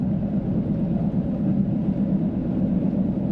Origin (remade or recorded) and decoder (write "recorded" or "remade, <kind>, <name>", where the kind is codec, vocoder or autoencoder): remade, vocoder, BigVGAN v2